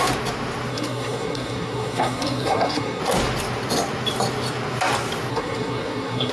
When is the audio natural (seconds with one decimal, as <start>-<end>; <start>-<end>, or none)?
0.0-0.7; 3.0-5.3